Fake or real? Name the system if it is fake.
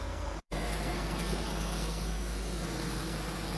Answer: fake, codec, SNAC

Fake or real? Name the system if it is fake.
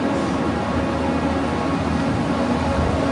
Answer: real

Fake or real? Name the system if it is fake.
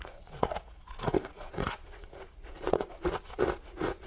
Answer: fake, vocoder, Vocos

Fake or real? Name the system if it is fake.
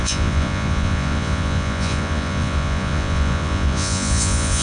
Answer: fake, vocoder, Vocos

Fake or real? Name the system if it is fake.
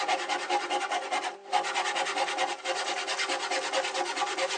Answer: real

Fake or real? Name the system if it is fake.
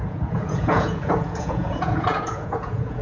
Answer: fake, vocoder, Vocos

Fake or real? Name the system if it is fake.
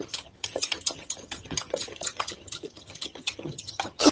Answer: fake, vocoder, HiFi-GAN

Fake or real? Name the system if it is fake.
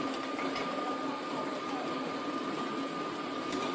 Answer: real